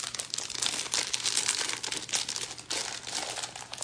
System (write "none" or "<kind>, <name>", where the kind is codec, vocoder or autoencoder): none